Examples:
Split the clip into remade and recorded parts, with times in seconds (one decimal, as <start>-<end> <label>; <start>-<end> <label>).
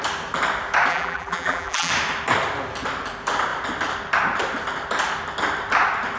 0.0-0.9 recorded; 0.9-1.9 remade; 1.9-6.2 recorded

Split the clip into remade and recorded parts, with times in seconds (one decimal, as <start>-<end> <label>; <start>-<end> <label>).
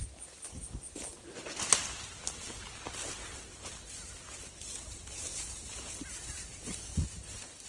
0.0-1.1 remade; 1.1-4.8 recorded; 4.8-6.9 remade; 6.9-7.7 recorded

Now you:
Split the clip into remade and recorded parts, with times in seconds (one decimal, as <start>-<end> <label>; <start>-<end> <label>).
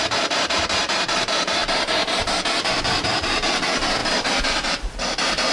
0.0-5.5 remade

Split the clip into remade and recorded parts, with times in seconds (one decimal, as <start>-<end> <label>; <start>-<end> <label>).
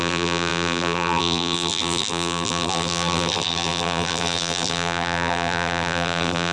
0.0-6.5 remade